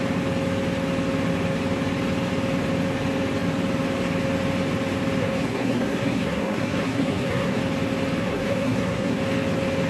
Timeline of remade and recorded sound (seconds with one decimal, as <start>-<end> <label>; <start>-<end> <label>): 0.0-5.2 recorded; 5.2-7.6 remade; 7.6-8.2 recorded; 8.2-9.2 remade; 9.2-9.9 recorded